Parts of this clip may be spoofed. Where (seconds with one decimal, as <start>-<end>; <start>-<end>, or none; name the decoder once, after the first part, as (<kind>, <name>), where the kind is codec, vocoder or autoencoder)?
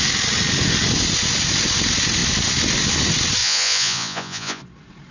3.4-4.6 (vocoder, Vocos)